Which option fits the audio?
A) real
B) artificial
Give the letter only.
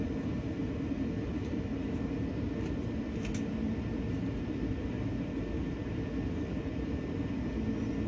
A